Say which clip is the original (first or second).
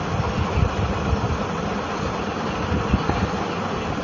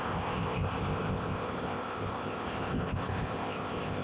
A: first